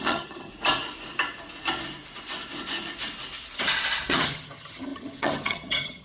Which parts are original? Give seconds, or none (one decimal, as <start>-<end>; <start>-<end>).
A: 0.5-4.1